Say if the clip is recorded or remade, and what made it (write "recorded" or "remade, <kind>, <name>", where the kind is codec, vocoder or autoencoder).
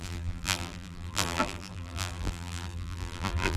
remade, vocoder, BigVGAN v2